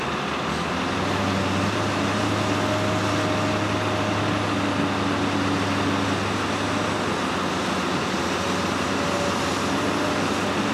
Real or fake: real